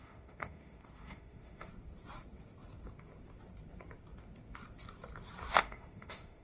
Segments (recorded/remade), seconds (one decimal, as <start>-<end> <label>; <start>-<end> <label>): 0.0-1.7 remade; 1.7-5.5 recorded; 5.5-6.4 remade

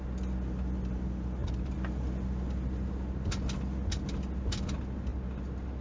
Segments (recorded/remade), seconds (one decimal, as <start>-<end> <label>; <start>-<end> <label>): 0.0-5.8 recorded

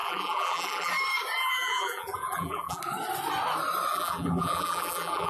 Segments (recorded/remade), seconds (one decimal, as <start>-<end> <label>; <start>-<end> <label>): 0.0-0.9 remade; 0.9-1.4 recorded; 1.4-2.8 remade; 2.8-3.9 recorded; 3.9-5.3 remade

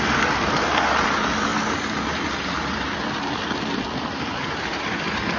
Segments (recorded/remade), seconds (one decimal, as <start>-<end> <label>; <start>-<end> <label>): 0.0-5.4 recorded

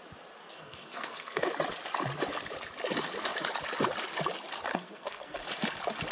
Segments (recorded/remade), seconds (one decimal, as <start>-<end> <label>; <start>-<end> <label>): 0.0-0.4 recorded; 0.4-1.5 remade; 1.5-4.7 recorded; 4.7-5.4 remade; 5.4-6.1 recorded

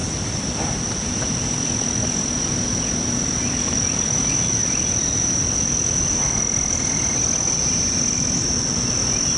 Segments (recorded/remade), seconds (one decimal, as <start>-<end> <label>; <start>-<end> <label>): 0.0-0.8 remade; 0.8-4.6 recorded; 4.6-5.4 remade; 5.4-9.4 recorded

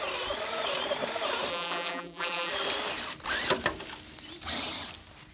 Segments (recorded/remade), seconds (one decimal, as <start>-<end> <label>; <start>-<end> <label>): 0.0-1.5 recorded; 1.5-2.5 remade; 2.5-5.3 recorded

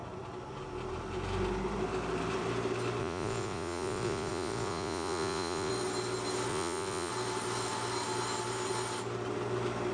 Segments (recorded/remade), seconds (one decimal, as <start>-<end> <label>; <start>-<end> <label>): 0.0-3.0 recorded; 3.0-5.7 remade; 5.7-6.5 recorded; 6.5-7.1 remade; 7.1-9.9 recorded